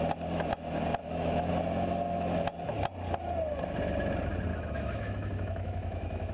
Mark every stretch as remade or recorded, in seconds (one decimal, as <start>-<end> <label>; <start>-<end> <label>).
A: 0.0-1.0 recorded; 1.0-1.5 remade; 1.5-4.5 recorded; 4.5-6.3 remade